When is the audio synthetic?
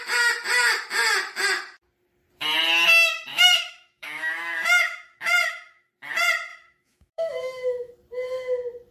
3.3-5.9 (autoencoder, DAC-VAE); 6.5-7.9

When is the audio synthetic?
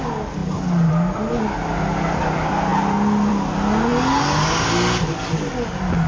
none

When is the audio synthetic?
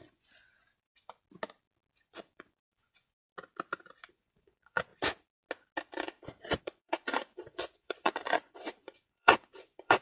0.0-0.9 (vocoder, Vocos); 2.0-3.3; 4.1-4.9; 6.6-10.0